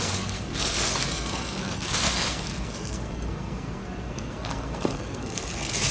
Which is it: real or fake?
fake